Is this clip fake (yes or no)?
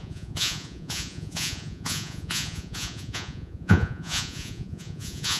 yes